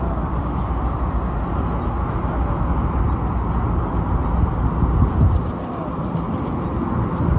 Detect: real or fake real